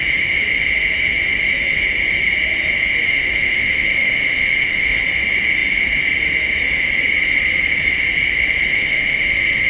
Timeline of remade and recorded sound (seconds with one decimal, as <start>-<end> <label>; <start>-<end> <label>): 0.0-3.1 recorded; 3.1-5.0 remade; 5.0-8.7 recorded; 8.7-9.7 remade